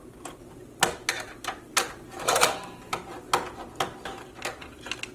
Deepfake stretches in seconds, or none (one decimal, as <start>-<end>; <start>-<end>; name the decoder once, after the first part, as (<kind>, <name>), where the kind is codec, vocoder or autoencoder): 0.0-3.1 (vocoder, BigVGAN v2)